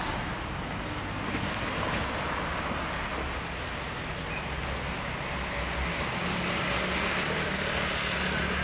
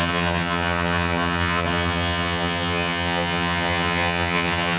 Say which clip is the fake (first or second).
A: second